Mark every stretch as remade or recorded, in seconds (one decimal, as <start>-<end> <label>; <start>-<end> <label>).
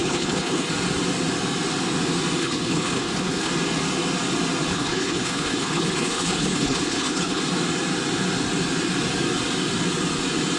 0.0-0.7 remade; 0.7-2.4 recorded; 2.4-3.5 remade; 3.5-4.7 recorded; 4.7-7.4 remade; 7.4-10.6 recorded